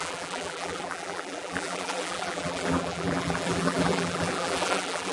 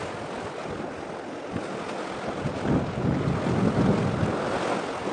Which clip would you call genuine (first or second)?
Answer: second